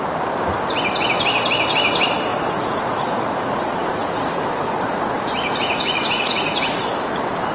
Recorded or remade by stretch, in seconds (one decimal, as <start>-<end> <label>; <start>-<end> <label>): 0.0-2.3 recorded; 2.3-6.8 remade; 6.8-7.5 recorded